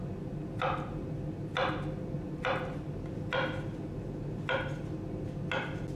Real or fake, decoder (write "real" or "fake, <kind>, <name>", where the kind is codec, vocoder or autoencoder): real